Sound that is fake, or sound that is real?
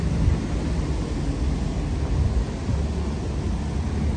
real